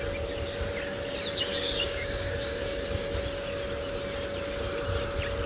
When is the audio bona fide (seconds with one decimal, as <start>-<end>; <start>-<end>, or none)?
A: 0.0-1.5; 3.2-5.5